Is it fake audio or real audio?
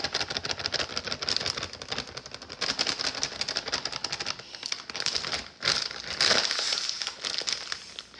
real